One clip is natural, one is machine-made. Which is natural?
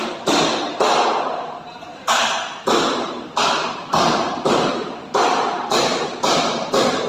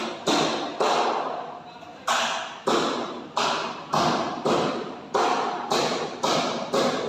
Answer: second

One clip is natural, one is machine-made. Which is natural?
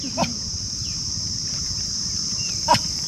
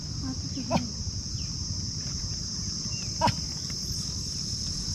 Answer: second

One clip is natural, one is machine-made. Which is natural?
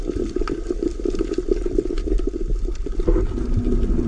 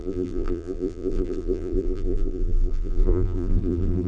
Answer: first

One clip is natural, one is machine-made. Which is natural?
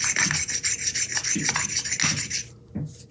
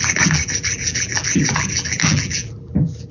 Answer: first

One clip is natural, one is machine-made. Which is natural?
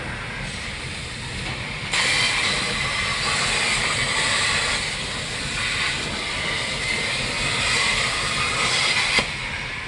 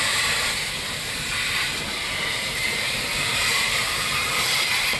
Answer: first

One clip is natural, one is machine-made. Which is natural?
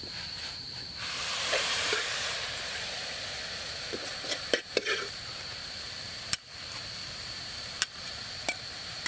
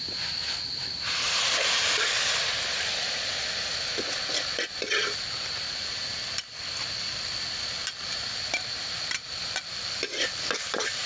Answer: second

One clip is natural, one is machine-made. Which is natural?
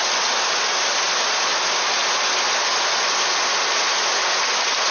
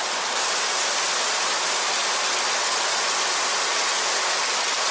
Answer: first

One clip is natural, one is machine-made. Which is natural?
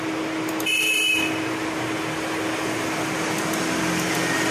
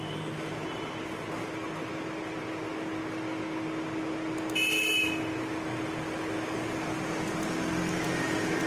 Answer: second